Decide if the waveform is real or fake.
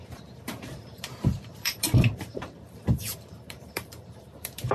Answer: fake